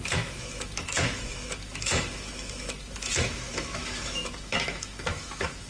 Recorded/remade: remade